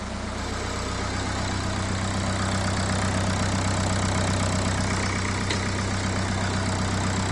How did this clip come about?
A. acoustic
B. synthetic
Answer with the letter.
A